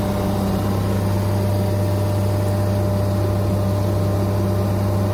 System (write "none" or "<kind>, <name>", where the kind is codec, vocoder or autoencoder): none